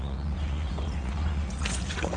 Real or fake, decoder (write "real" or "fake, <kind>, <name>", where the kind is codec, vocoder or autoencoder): fake, vocoder, Vocos